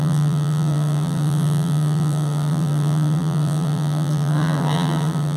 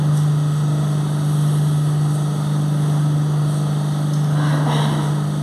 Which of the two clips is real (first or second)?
second